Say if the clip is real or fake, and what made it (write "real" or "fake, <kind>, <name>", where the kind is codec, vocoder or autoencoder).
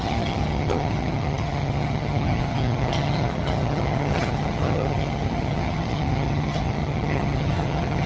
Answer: fake, vocoder, HiFi-GAN